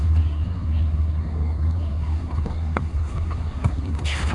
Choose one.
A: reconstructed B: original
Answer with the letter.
A